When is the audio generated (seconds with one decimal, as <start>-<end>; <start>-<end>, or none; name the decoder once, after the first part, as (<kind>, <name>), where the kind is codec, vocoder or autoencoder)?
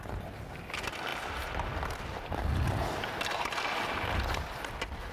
none